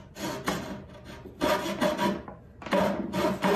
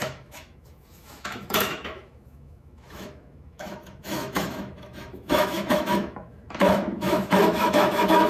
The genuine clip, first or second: first